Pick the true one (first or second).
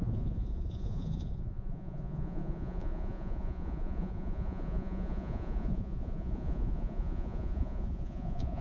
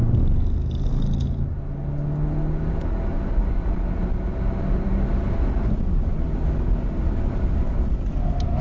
second